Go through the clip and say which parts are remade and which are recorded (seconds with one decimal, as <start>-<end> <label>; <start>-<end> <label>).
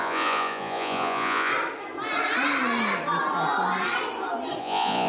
0.0-1.5 remade; 1.5-4.6 recorded; 4.6-5.1 remade